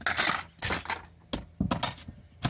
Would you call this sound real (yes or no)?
yes